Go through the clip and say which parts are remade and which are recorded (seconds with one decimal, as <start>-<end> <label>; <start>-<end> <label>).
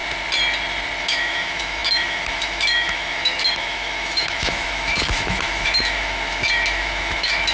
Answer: 0.0-1.0 recorded; 1.0-7.5 remade